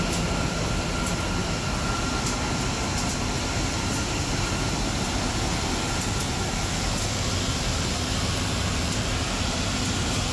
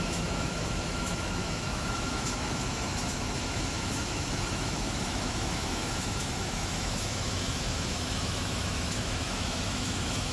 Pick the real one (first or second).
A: first